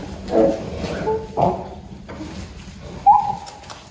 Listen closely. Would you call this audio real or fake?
real